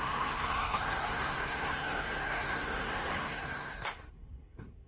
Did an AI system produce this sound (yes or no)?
yes